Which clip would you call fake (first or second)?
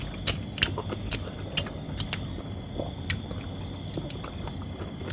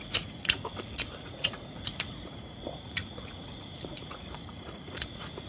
second